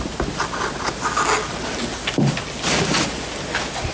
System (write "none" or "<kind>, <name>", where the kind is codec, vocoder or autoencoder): none